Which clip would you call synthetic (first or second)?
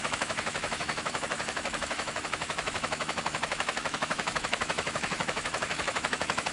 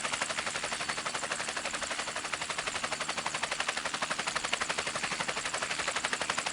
first